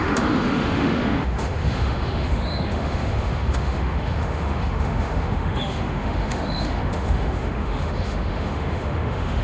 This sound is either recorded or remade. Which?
remade